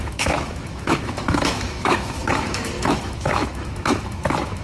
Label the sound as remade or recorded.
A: remade